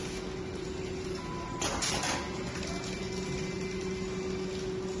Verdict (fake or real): real